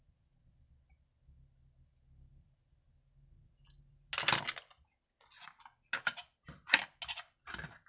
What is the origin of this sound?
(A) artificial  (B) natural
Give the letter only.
B